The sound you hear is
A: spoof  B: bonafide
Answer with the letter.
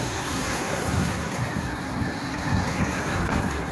A